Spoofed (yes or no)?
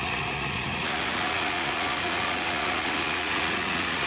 yes